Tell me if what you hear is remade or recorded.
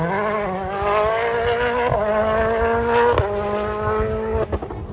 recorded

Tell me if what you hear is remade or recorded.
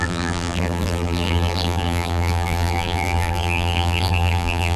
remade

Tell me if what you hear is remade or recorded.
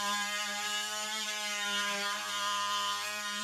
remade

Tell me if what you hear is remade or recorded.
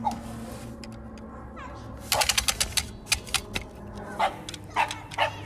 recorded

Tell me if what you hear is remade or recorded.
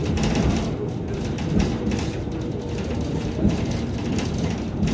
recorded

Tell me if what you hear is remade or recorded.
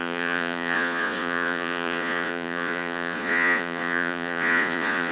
remade